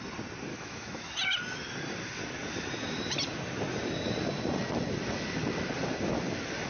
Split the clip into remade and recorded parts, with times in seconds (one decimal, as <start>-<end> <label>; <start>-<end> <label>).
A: 0.0-0.5 recorded; 0.5-1.1 remade; 1.1-6.7 recorded

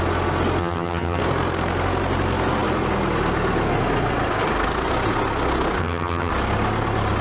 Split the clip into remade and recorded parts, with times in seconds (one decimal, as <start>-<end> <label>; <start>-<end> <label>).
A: 0.0-0.6 recorded; 0.6-1.2 remade; 1.2-5.8 recorded; 5.8-6.3 remade; 6.3-7.2 recorded